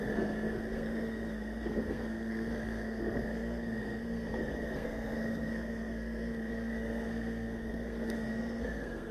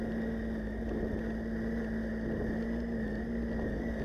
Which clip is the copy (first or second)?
first